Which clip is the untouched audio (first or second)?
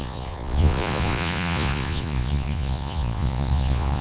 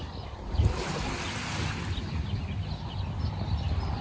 second